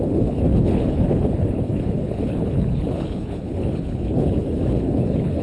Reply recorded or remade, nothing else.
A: remade